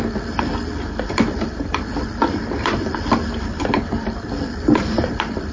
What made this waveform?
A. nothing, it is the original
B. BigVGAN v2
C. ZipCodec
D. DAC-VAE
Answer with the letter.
B